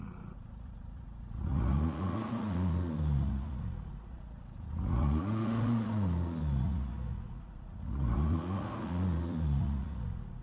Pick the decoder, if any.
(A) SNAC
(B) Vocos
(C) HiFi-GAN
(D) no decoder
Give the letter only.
B